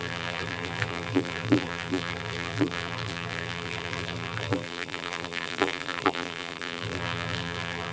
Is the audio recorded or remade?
remade